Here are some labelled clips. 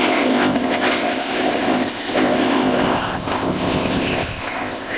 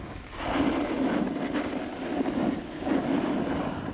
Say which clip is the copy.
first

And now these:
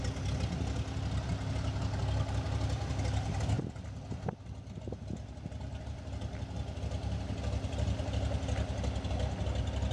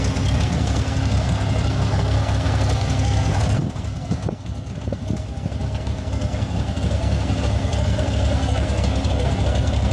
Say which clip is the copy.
second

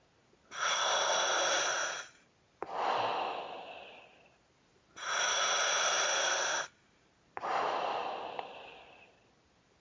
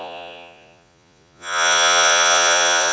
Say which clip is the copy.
second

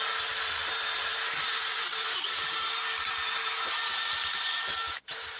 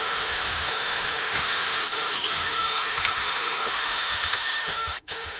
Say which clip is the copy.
second